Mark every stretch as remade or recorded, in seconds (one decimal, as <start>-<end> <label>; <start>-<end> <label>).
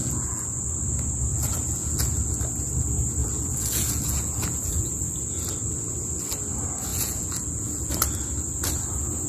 0.0-0.6 remade; 0.6-1.3 recorded; 1.3-2.4 remade; 2.4-3.2 recorded; 3.2-4.9 remade; 4.9-6.9 recorded; 6.9-7.9 remade; 7.9-9.3 recorded